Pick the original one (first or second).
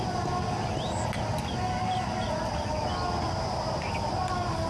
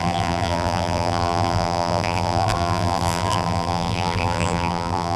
first